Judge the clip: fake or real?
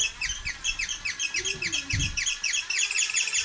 fake